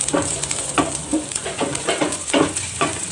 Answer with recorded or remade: remade